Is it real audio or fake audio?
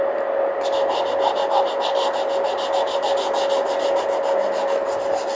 real